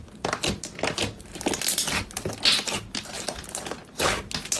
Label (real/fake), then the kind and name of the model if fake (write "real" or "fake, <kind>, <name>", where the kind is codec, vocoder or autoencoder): real